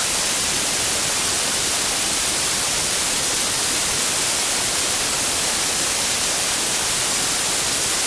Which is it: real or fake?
real